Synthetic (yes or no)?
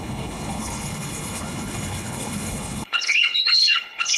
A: yes